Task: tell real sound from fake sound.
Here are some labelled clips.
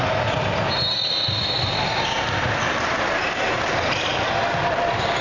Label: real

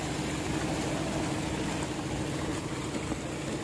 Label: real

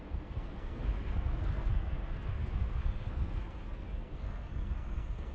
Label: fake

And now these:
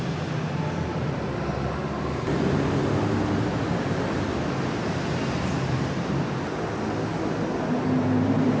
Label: real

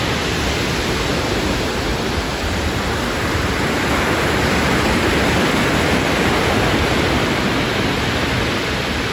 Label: real